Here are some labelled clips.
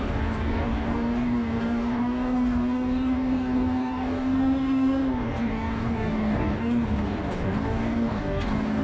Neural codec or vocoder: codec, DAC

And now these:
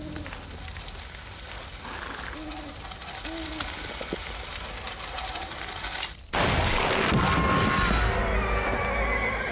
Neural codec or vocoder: none